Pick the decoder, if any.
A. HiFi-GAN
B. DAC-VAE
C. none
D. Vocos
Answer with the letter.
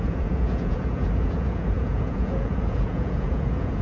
D